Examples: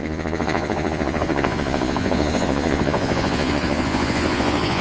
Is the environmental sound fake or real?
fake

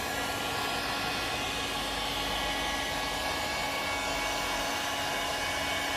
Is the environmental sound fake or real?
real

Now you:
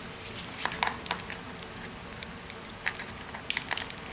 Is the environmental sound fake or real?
real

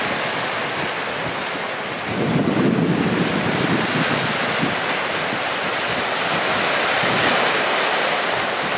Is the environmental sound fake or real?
real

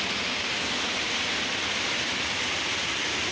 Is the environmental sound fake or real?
real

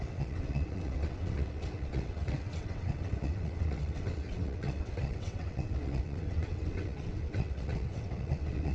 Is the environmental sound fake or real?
fake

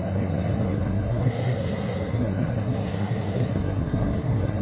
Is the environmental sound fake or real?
fake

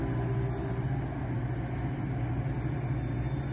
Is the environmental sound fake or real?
real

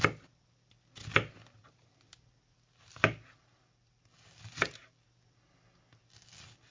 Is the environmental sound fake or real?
real